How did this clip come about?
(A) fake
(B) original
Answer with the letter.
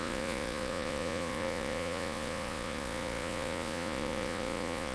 A